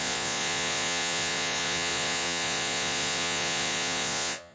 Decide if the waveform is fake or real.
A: fake